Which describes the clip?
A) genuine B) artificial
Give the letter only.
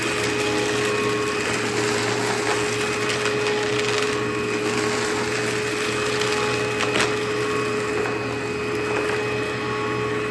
A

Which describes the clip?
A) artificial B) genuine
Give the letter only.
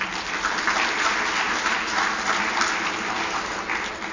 B